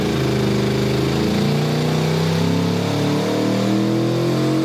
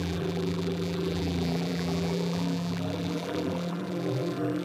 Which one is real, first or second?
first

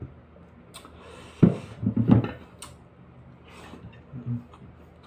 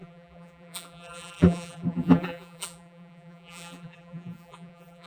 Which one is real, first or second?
first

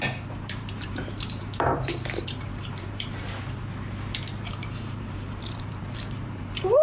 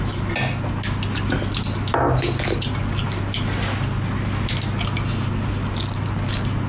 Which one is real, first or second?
second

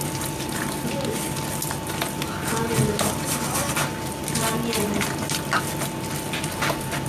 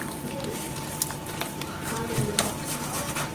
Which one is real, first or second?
first